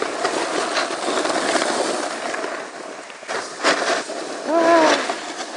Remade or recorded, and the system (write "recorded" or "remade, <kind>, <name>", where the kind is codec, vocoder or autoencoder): recorded